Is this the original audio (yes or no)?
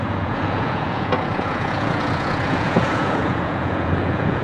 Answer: no